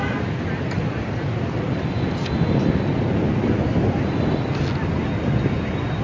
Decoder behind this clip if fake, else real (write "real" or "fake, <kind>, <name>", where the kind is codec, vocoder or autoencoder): real